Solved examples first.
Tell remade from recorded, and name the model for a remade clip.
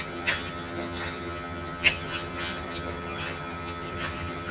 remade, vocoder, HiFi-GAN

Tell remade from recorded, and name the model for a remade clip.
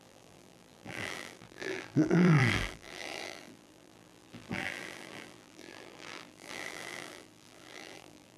remade, vocoder, BigVGAN v2